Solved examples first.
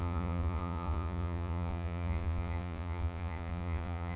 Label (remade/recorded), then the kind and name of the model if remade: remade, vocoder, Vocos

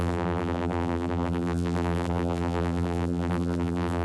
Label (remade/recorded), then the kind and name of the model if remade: remade, vocoder, BigVGAN v2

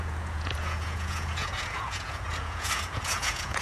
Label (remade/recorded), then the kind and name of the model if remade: remade, vocoder, Vocos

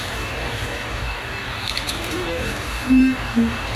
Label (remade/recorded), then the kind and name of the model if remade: remade, codec, DAC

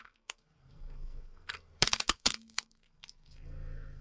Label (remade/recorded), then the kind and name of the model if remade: remade, codec, SNAC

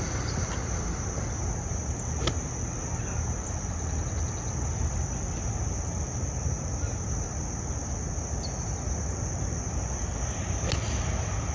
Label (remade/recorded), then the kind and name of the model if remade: recorded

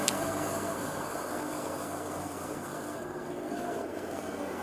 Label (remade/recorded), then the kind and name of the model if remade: remade, codec, SNAC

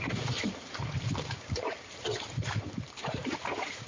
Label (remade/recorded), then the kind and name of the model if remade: remade, vocoder, BigVGAN v2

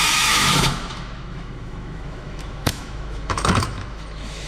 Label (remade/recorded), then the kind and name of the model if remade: remade, autoencoder, DAC-VAE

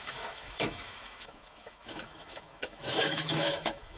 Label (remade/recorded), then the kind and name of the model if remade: remade, autoencoder, DAC-VAE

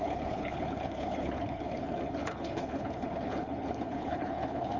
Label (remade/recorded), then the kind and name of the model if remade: remade, codec, HILCodec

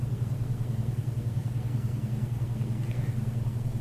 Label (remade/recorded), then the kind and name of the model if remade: remade, codec, SNAC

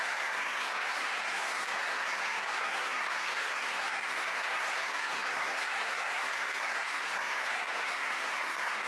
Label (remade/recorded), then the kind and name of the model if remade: remade, codec, SNAC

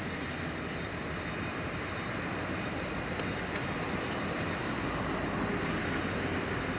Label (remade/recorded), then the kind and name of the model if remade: recorded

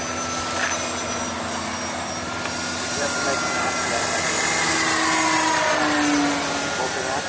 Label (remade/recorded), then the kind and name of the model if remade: recorded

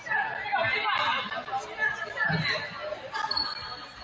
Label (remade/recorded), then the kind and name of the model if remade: recorded